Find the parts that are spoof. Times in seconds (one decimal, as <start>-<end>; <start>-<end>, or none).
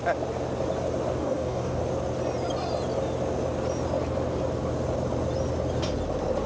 1.2-1.8